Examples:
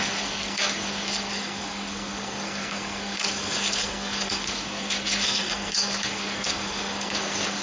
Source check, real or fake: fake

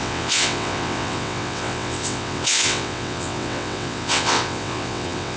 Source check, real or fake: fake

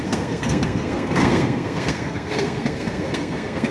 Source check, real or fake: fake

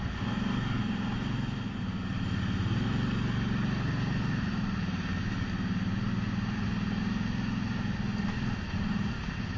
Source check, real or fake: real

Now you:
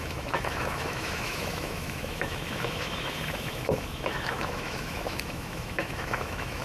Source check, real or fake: fake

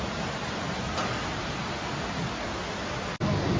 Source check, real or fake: real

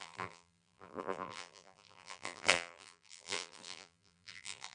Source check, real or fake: fake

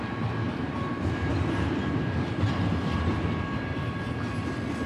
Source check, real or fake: real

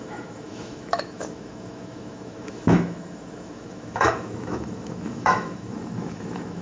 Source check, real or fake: fake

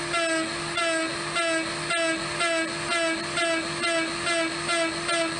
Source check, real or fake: real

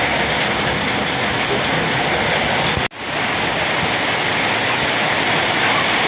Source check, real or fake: real